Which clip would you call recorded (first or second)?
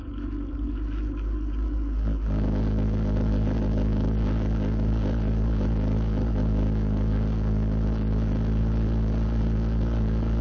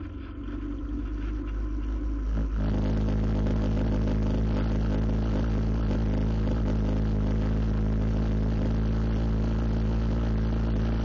second